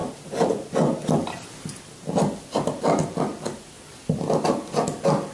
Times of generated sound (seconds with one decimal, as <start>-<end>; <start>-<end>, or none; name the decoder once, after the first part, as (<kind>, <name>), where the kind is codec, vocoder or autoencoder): none